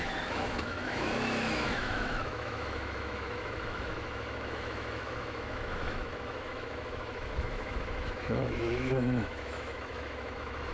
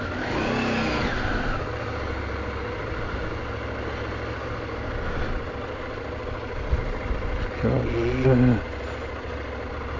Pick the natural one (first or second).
second